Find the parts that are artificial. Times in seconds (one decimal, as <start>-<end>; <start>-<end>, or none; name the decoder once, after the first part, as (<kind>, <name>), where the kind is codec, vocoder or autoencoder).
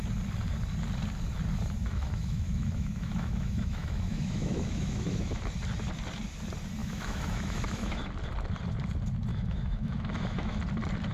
1.8-5.4 (autoencoder, DAC-VAE); 6.8-8.0; 9.3-10.6